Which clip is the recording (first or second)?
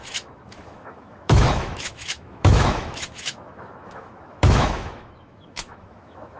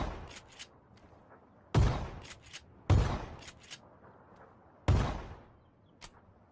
second